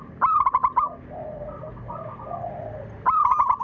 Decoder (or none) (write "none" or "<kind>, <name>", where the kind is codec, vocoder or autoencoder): none